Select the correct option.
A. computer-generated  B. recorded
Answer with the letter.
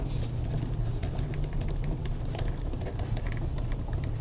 B